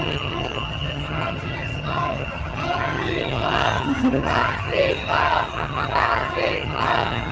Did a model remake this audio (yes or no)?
yes